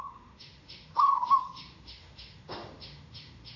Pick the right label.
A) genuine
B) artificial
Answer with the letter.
B